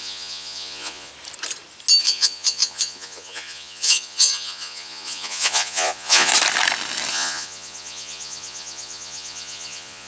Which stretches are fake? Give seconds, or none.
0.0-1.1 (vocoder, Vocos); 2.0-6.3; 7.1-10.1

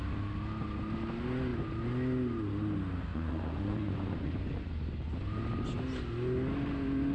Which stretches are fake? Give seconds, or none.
3.1-4.3 (vocoder, Vocos)